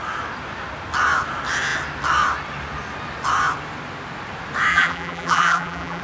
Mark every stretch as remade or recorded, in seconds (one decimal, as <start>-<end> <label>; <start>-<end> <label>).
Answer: 0.0-4.7 recorded; 4.7-6.0 remade